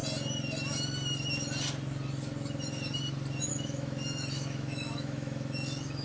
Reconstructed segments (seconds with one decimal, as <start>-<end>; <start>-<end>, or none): 3.5-6.0